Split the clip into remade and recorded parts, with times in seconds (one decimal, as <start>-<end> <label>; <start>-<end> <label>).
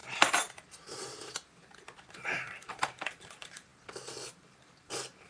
0.0-2.1 recorded; 2.1-3.7 remade; 3.7-4.3 recorded; 4.3-5.3 remade